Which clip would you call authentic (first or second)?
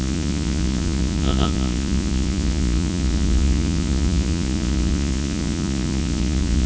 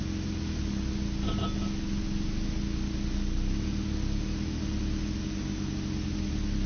second